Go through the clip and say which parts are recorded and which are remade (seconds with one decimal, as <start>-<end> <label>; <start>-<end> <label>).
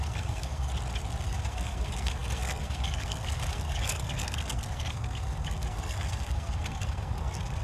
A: 0.0-0.7 remade; 0.7-1.2 recorded; 1.2-7.6 remade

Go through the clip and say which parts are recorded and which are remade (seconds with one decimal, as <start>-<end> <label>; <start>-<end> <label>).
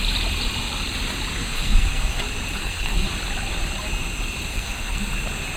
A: 0.0-1.4 recorded; 1.4-2.2 remade; 2.2-2.6 recorded; 2.6-3.1 remade; 3.1-4.5 recorded; 4.5-5.1 remade; 5.1-5.6 recorded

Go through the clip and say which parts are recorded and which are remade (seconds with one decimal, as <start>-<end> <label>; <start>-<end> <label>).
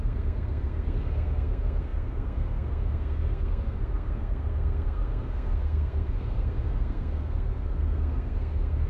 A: 0.0-8.9 remade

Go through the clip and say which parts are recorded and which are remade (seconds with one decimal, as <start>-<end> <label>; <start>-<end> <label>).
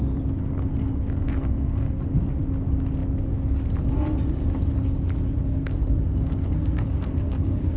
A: 0.0-0.4 recorded; 0.4-2.0 remade; 2.0-5.5 recorded; 5.5-7.8 remade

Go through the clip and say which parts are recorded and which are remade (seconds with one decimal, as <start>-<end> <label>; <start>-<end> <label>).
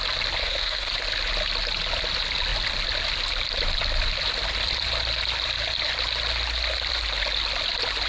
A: 0.0-0.4 recorded; 0.4-0.9 remade; 0.9-8.1 recorded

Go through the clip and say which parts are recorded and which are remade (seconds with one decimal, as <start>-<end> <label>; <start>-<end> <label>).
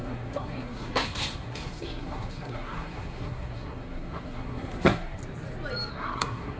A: 0.0-5.2 remade; 5.2-5.9 recorded; 5.9-6.6 remade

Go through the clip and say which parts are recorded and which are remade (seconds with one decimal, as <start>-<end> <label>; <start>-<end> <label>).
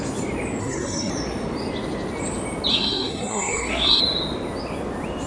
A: 0.0-0.6 recorded; 0.6-1.1 remade; 1.1-2.7 recorded; 2.7-4.0 remade; 4.0-5.3 recorded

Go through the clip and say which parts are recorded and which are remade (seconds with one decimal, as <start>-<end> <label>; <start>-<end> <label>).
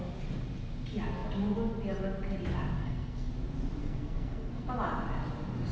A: 0.0-2.8 recorded; 2.8-3.3 remade; 3.3-3.8 recorded; 3.8-4.7 remade; 4.7-5.7 recorded